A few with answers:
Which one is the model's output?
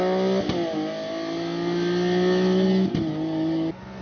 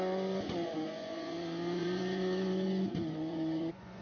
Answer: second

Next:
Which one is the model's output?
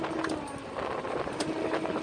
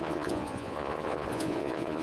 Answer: second